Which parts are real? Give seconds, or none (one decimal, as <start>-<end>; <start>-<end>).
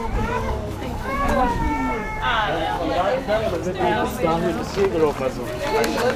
3.6-5.4